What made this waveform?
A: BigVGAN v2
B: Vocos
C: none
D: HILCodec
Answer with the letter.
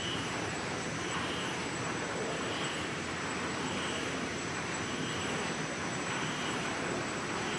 A